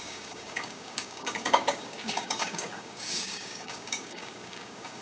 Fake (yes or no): yes